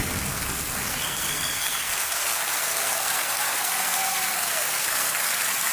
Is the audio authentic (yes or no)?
no